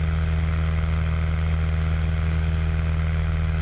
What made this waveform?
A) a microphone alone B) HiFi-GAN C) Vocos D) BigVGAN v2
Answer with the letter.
A